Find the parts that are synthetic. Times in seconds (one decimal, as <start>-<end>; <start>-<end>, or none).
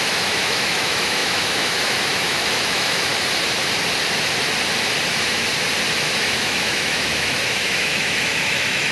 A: 0.0-3.1; 5.1-5.5; 6.2-8.9